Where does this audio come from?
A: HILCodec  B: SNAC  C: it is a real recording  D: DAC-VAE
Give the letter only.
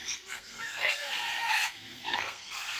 B